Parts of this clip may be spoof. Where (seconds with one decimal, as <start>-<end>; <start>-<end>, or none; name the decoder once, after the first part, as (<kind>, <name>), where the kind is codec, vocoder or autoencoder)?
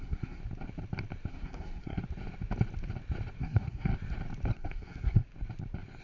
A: 0.0-0.4 (codec, SNAC); 1.3-2.0; 3.4-3.9; 4.5-5.2